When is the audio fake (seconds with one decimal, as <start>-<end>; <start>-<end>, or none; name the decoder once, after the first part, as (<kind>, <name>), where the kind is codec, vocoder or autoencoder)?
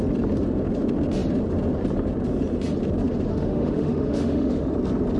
3.3-4.7 (autoencoder, DAC-VAE)